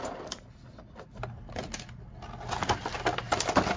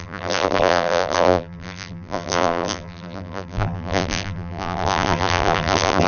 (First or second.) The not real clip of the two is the second